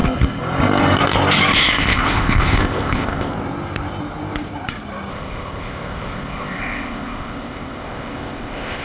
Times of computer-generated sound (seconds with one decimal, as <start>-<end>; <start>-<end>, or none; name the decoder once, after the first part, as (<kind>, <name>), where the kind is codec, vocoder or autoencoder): 1.5-3.3 (codec, ZipCodec); 5.1-8.8